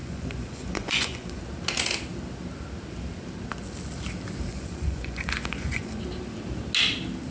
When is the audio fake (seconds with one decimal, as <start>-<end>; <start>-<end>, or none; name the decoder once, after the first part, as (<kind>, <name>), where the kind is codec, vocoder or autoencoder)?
0.0-1.4 (vocoder, Vocos); 4.5-6.0